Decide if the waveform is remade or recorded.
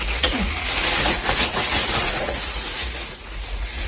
remade